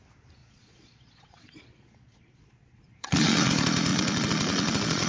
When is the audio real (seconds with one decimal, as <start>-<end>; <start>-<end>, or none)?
0.0-0.4; 3.5-3.9